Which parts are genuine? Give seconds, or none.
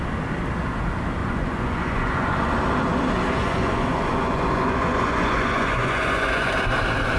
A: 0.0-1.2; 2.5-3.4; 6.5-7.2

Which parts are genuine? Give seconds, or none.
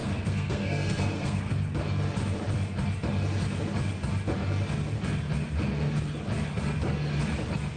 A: 1.5-7.8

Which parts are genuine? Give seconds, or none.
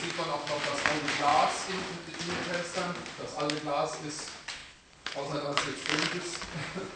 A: 0.0-4.6; 6.2-7.0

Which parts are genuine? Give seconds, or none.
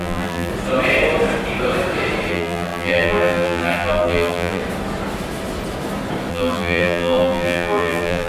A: 0.5-2.3; 4.6-6.3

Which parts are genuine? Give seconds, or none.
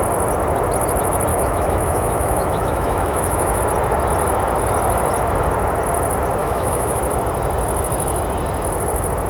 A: 0.0-1.3; 3.6-6.4; 7.0-9.3